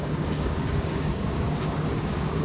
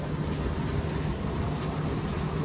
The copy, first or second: first